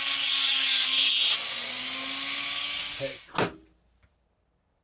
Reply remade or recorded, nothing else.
recorded